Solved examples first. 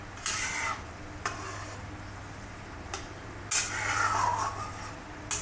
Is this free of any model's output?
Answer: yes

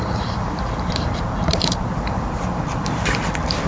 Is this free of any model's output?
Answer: no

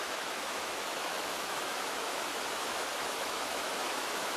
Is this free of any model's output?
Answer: no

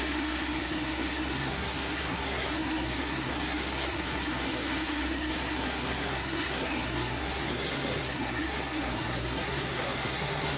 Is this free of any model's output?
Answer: no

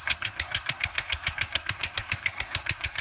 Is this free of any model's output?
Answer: no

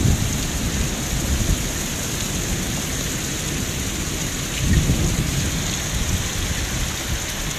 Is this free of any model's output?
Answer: yes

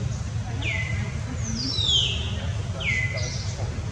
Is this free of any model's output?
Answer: yes